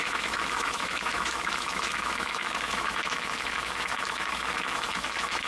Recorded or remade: remade